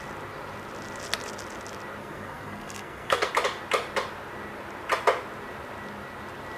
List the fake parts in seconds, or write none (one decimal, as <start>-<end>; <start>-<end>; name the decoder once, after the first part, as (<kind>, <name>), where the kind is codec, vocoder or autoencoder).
2.0-3.3 (codec, SNAC)